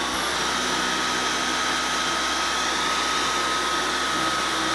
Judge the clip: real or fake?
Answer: real